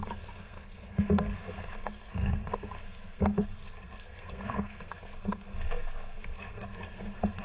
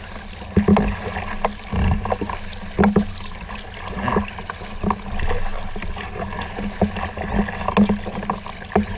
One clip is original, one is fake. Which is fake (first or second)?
first